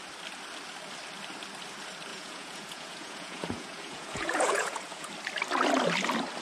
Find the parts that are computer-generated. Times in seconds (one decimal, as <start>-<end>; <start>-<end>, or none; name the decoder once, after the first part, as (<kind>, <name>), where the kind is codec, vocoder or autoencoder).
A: 2.1-5.1 (vocoder, Vocos)